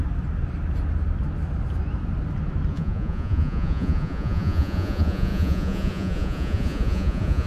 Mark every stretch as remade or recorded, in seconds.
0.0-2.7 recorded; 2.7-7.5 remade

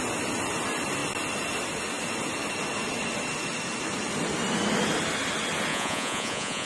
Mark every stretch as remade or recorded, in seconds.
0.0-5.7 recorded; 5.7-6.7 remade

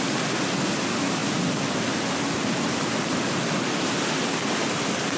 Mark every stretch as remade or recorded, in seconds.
0.0-5.2 recorded